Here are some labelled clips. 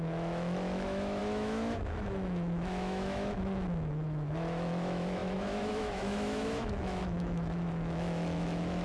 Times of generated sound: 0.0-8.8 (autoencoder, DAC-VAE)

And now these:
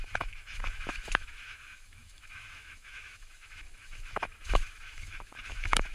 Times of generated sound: 0.0-5.9 (autoencoder, DAC-VAE)

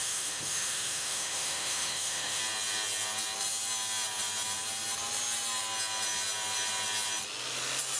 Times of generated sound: 0.0-2.4 (autoencoder, DAC-VAE)

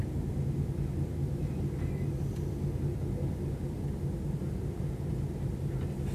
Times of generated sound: none

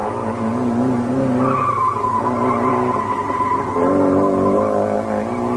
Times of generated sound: none

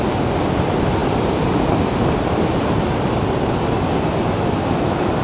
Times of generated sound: none